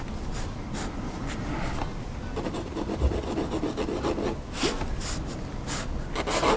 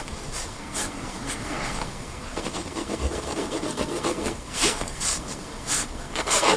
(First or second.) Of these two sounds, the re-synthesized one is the second